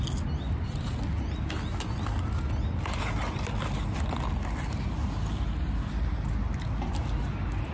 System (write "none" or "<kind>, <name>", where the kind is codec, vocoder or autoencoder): none